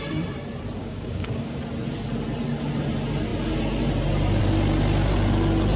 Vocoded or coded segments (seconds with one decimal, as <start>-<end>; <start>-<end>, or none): 0.8-1.6